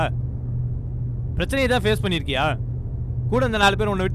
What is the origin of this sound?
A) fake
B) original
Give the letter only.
B